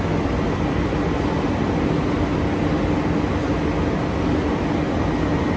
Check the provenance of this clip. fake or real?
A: real